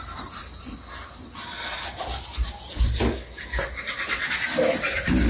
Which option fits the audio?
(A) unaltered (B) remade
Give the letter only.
A